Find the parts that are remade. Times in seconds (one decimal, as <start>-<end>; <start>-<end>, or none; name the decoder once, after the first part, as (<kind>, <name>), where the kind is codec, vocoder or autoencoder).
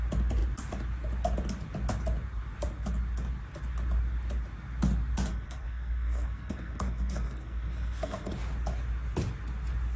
5.3-8.3 (codec, SNAC)